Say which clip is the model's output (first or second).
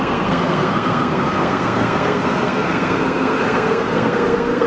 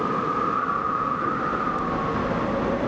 first